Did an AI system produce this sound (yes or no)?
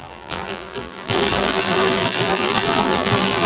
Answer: yes